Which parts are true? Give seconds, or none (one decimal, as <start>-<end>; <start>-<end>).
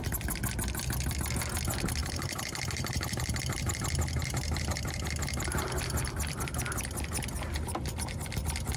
0.0-2.0; 3.8-4.2; 6.4-8.8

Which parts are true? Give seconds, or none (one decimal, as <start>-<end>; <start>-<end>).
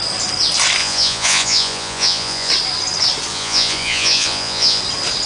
0.0-0.8; 2.5-3.3; 4.8-5.3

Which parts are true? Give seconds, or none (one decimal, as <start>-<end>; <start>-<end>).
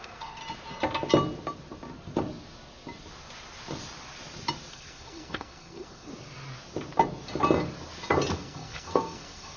0.4-4.7; 6.1-8.3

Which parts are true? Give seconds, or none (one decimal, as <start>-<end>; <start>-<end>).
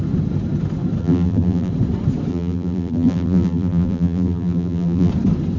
0.0-1.0; 1.7-2.3; 5.1-5.6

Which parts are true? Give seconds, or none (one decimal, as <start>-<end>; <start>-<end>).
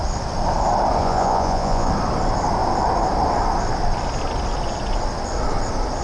0.0-1.0; 1.9-6.0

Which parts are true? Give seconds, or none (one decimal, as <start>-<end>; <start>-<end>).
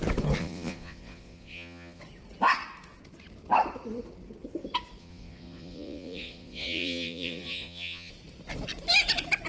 0.0-0.4; 2.0-5.0; 8.1-9.5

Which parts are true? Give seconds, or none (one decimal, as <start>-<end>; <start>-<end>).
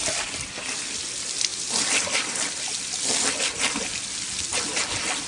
0.0-5.3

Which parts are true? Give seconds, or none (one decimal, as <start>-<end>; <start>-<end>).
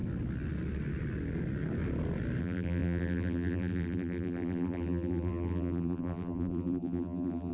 0.0-2.4